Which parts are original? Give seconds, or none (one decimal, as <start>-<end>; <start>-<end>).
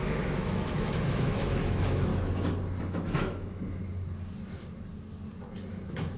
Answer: 2.1-2.8; 3.8-5.7